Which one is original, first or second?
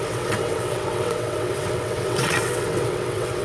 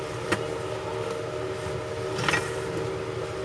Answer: second